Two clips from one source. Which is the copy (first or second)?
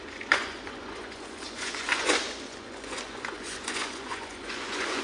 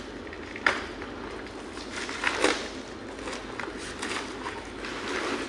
first